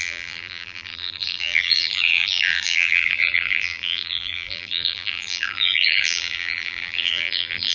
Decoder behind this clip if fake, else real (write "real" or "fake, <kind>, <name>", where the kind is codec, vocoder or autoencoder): fake, vocoder, BigVGAN v2